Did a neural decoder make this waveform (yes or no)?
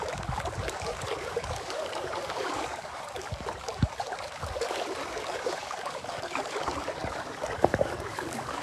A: yes